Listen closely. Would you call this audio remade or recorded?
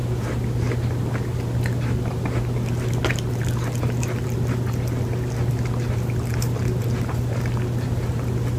recorded